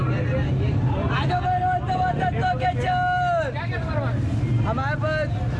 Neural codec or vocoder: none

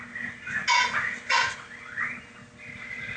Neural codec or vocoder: none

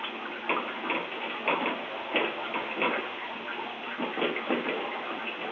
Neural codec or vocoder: none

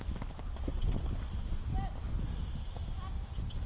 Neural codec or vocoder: none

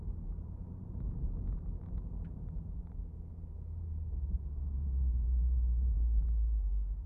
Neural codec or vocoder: vocoder, BigVGAN v2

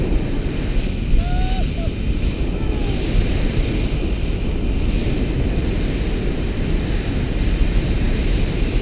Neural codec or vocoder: none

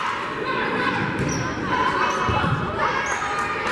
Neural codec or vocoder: vocoder, BigVGAN v2